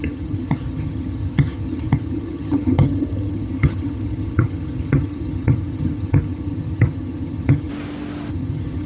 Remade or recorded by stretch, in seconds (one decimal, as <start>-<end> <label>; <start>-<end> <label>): 0.0-7.7 remade; 7.7-8.3 recorded; 8.3-8.9 remade